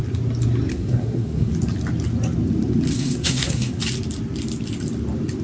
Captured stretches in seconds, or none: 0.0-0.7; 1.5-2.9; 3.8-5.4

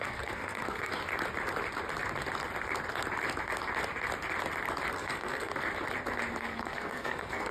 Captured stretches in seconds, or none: 1.0-4.9; 5.5-6.4

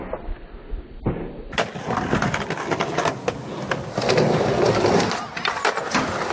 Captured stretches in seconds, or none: 0.0-6.3